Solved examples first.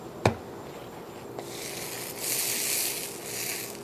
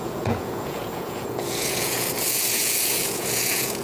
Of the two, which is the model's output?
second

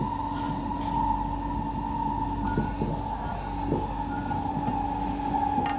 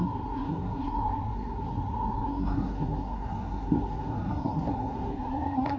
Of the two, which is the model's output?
second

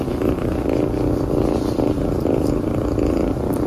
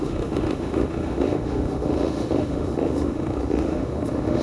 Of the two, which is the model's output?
second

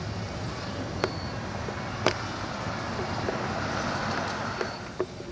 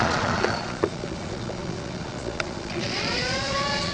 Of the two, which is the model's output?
second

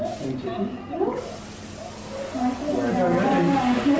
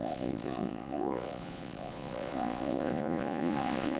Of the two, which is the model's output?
second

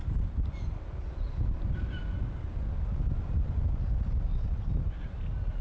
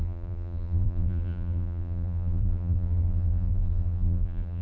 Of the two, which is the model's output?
second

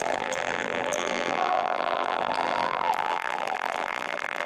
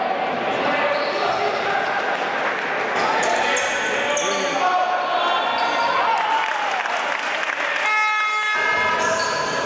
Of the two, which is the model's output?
first